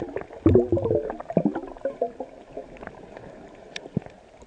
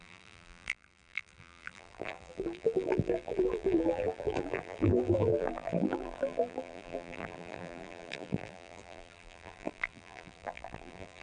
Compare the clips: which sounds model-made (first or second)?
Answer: second